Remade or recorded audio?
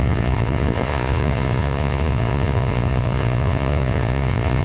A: remade